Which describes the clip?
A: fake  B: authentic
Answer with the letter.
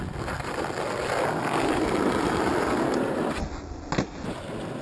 B